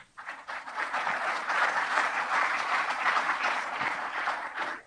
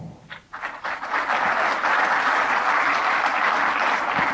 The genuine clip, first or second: second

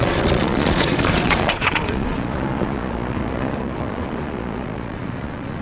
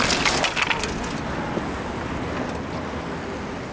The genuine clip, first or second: second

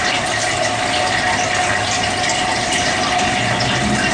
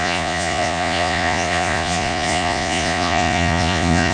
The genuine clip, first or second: first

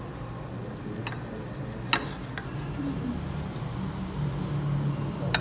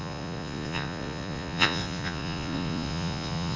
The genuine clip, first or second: first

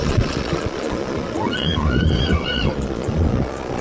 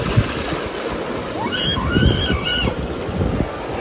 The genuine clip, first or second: second